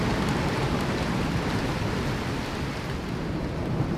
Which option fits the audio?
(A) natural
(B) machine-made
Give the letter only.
A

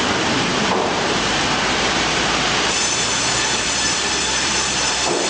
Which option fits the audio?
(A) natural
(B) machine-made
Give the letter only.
B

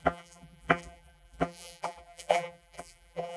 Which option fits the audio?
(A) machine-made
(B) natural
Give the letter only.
A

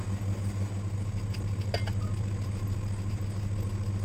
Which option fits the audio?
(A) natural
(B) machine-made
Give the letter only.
A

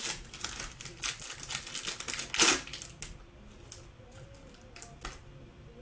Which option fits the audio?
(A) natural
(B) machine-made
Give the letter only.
A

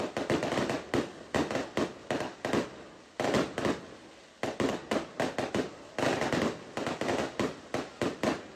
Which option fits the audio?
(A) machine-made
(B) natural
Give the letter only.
B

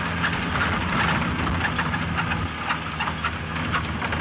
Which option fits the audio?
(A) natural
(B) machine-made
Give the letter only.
A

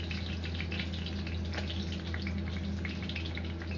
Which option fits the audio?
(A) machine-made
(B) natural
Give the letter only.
B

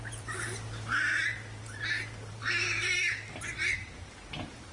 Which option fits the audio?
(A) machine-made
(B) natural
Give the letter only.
A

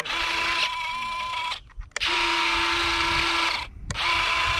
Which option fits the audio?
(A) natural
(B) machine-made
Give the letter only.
A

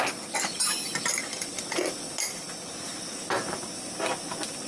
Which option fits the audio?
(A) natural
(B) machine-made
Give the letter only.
A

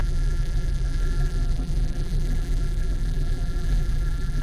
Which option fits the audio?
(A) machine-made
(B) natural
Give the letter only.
A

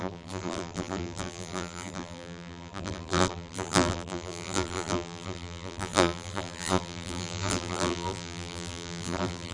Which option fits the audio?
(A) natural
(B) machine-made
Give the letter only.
B